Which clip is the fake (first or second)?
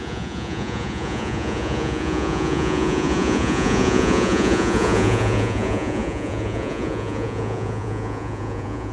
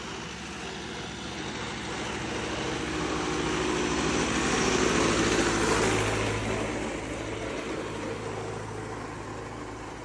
first